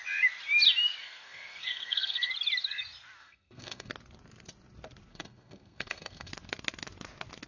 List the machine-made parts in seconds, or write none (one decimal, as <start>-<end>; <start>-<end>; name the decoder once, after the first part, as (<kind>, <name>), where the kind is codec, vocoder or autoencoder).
1.0-2.3 (codec, SNAC); 3.2-3.9; 5.1-6.3